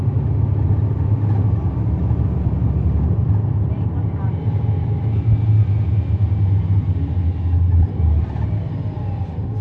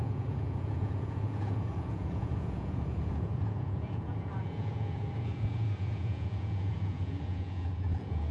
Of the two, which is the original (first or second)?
first